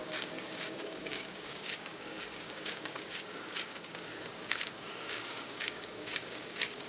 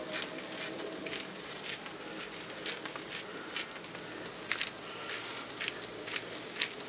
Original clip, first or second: second